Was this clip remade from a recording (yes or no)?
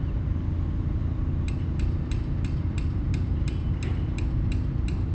no